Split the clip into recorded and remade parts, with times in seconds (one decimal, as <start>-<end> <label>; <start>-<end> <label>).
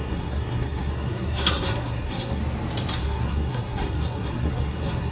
0.0-2.4 remade; 2.4-3.0 recorded; 3.0-5.1 remade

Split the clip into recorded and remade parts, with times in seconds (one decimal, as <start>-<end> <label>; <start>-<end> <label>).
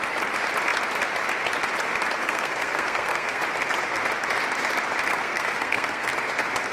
0.0-2.2 recorded; 2.2-3.4 remade; 3.4-5.1 recorded; 5.1-6.1 remade; 6.1-6.7 recorded